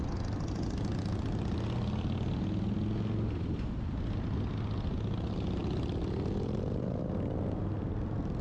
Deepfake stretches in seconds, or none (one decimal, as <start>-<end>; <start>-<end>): none